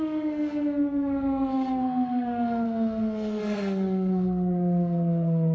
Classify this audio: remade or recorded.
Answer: remade